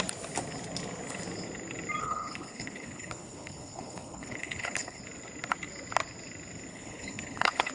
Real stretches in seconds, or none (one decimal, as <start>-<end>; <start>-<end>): 0.0-2.0; 5.0-6.7